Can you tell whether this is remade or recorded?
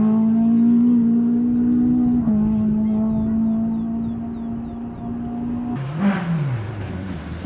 recorded